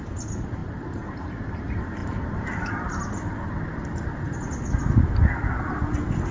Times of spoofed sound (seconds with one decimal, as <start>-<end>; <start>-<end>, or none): 0.6-1.3